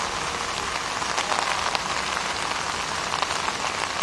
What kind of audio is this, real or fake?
real